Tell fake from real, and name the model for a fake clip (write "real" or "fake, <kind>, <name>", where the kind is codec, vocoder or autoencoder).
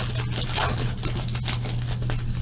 real